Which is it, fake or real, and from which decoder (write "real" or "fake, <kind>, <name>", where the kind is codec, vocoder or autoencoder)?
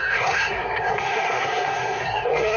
fake, codec, SNAC